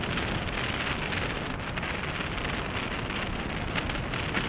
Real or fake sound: real